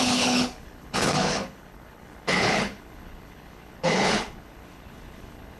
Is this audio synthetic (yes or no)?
yes